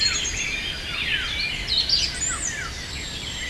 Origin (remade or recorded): recorded